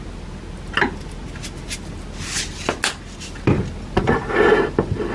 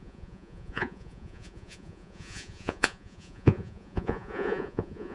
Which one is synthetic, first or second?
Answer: second